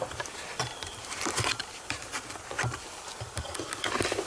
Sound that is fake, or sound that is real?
fake